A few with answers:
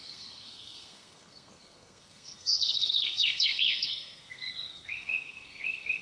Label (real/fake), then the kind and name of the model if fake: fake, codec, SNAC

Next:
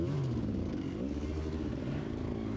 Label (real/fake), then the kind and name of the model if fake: fake, codec, DAC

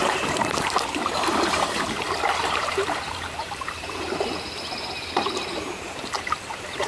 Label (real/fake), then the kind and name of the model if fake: fake, vocoder, BigVGAN v2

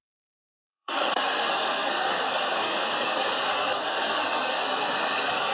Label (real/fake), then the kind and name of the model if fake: fake, codec, SNAC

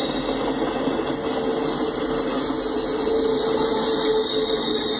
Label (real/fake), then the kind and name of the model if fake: real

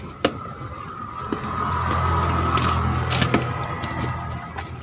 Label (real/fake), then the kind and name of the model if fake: real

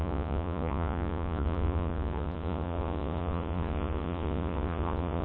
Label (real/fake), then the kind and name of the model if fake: fake, vocoder, Vocos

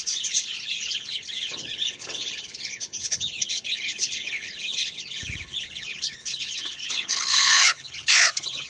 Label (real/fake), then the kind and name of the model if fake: fake, codec, HILCodec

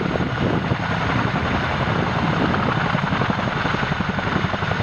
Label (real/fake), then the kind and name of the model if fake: real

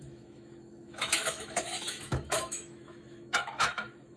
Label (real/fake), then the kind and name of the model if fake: fake, autoencoder, DAC-VAE